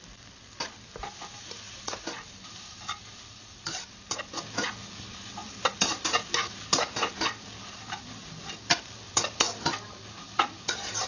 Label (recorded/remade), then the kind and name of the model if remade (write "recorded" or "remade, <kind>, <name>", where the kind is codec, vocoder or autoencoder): recorded